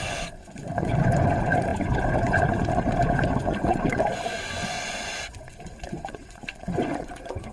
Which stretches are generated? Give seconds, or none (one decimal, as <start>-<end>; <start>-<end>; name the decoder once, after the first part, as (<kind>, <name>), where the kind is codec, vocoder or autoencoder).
0.0-7.5 (vocoder, Vocos)